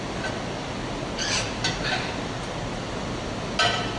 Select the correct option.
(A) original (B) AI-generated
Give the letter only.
A